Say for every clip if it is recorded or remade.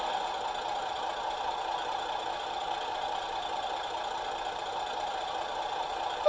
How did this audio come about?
recorded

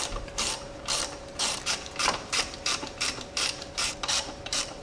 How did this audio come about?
remade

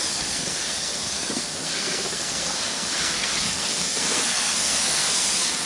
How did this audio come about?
remade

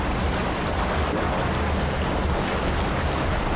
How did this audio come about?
recorded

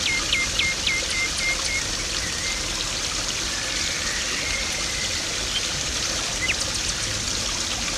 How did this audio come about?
recorded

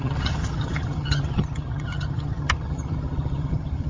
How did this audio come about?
remade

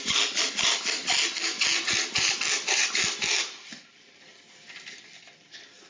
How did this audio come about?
recorded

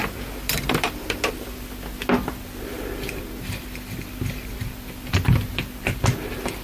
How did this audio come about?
recorded